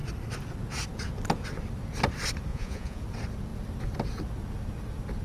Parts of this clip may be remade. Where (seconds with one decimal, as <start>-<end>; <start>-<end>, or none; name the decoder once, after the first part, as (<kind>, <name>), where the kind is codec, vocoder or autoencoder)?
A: 2.5-3.0 (vocoder, Vocos)